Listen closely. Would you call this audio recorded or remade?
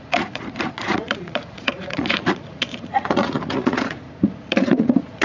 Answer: remade